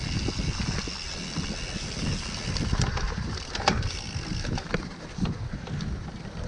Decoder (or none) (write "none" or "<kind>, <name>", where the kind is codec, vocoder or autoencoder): none